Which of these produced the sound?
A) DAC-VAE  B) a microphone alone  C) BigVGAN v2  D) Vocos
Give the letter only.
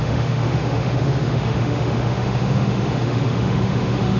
A